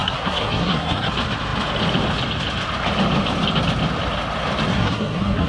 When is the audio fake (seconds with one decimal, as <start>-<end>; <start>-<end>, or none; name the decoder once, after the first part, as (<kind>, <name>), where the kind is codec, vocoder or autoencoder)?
0.0-1.1 (codec, SNAC); 4.7-5.5